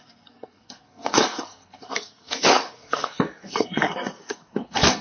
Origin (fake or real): fake